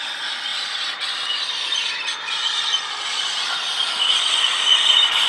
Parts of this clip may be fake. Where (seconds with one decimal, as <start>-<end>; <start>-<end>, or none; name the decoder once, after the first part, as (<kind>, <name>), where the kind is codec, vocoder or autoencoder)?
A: 0.5-3.4 (vocoder, BigVGAN v2); 4.7-5.3